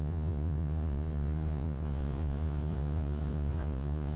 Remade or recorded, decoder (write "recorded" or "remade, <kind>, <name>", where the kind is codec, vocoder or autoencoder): remade, vocoder, Vocos